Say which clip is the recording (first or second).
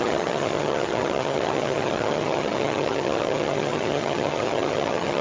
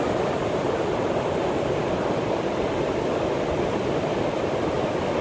second